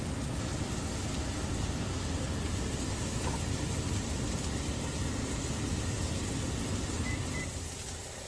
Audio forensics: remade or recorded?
recorded